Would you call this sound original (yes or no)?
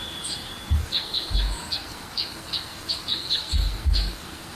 no